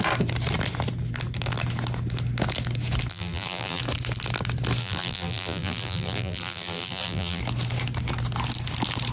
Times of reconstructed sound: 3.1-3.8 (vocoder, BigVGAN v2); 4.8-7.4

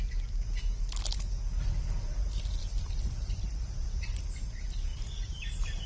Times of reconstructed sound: 2.6-4.2 (vocoder, BigVGAN v2)